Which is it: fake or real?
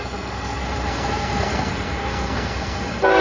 fake